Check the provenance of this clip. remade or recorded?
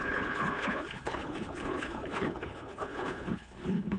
remade